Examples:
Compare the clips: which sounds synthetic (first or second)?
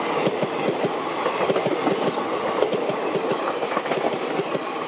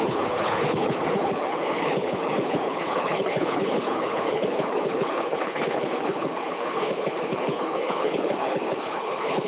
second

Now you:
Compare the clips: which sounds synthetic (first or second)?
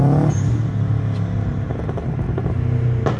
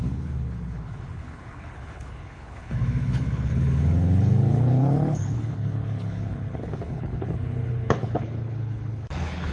second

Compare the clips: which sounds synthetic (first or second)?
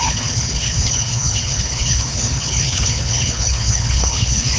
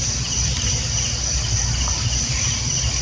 first